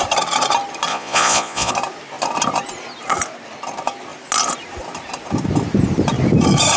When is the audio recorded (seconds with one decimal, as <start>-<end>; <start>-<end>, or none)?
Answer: 0.0-0.9; 1.7-6.8